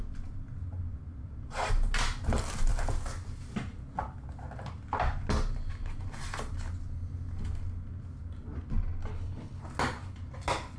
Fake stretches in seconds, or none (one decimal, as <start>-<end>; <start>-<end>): 9.1-9.6